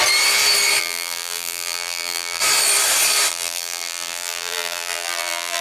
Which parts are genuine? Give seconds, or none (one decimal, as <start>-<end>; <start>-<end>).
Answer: 0.0-0.8; 2.4-3.3